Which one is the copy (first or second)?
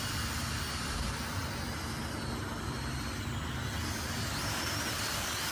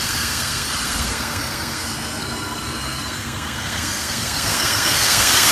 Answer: second